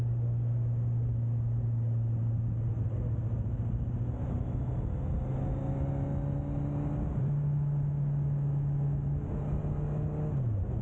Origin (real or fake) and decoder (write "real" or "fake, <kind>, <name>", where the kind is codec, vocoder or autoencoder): real